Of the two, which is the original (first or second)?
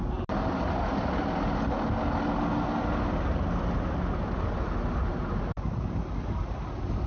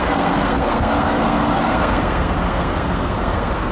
first